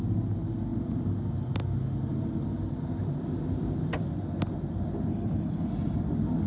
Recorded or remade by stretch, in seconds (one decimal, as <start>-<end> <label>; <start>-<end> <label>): 0.0-5.1 recorded; 5.1-5.7 remade; 5.7-6.5 recorded